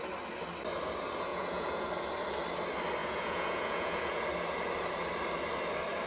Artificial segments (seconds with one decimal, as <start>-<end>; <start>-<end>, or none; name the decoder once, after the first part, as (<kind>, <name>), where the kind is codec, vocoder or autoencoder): 1.3-1.9 (vocoder, Vocos); 3.0-4.2